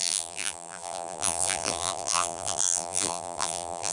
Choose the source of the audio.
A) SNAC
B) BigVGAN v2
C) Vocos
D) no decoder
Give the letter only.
B